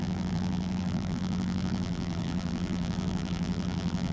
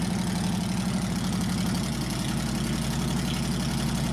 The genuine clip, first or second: second